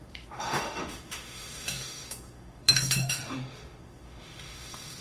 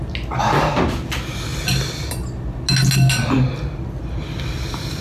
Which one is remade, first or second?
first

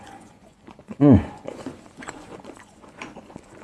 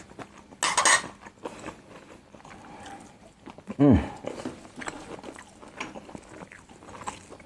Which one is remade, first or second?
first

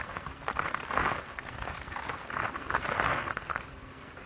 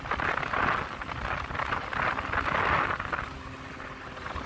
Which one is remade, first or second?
first